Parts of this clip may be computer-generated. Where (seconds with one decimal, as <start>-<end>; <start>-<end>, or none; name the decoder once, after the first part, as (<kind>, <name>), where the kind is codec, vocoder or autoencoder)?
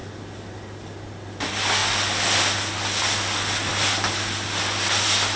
none